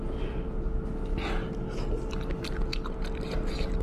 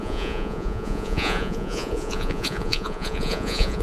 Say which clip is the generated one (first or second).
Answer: second